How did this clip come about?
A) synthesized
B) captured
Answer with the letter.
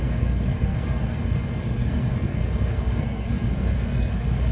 A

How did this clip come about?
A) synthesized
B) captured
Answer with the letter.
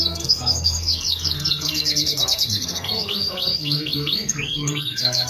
A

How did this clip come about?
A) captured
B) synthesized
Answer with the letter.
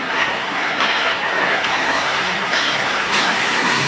B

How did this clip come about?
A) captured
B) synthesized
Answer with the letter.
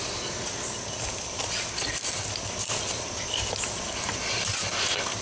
A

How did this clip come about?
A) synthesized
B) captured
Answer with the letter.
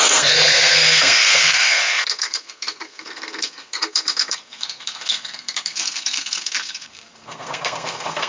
A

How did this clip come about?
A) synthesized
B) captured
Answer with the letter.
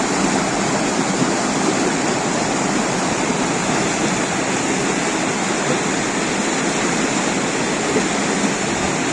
B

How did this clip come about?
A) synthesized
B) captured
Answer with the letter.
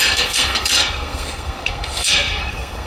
A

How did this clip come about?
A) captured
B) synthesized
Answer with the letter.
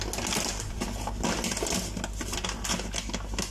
A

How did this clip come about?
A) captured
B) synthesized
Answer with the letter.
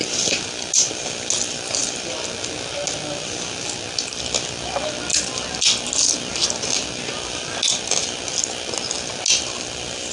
A